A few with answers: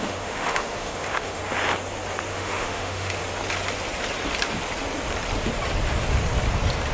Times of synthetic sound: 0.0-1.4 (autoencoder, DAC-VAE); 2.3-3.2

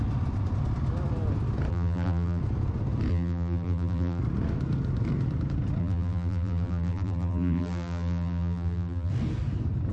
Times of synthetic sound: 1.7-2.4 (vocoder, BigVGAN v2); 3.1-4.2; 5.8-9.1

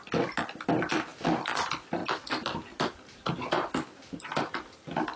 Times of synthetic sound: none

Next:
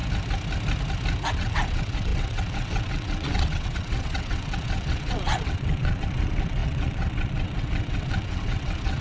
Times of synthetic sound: 1.3-9.0 (vocoder, WaveNeXt)